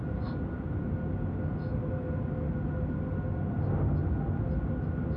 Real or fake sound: real